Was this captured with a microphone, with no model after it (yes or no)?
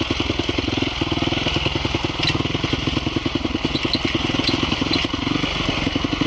yes